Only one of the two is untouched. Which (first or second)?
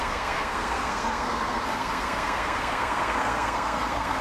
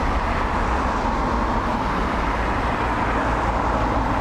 second